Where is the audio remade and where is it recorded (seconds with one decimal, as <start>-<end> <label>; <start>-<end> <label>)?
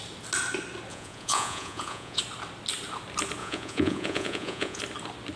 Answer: 0.0-0.9 recorded; 0.9-2.2 remade; 2.2-3.4 recorded; 3.4-4.8 remade; 4.8-5.4 recorded